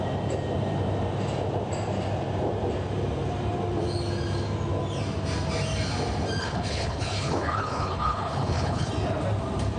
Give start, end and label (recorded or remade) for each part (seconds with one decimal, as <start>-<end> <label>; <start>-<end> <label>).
0.0-6.4 recorded; 6.4-8.9 remade; 8.9-9.8 recorded